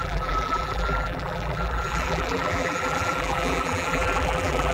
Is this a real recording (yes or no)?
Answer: no